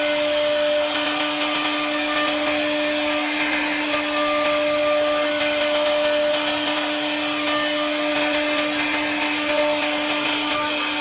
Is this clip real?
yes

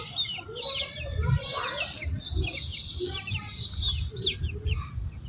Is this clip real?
yes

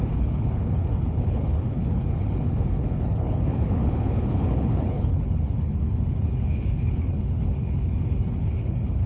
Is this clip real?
no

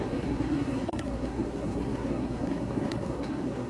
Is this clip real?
no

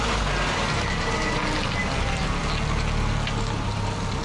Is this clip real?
yes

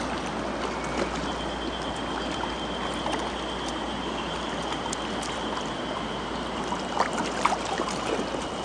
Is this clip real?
yes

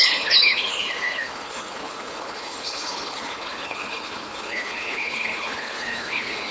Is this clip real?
no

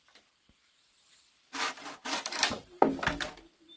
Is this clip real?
yes